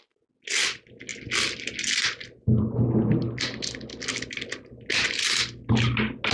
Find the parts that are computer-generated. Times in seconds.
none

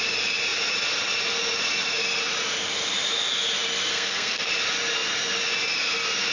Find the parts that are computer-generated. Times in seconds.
3.9-4.5 (codec, SNAC)

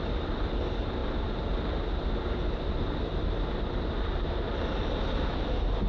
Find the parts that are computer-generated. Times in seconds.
none